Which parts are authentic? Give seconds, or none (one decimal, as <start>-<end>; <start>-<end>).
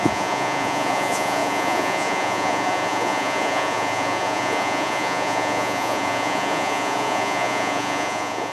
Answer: none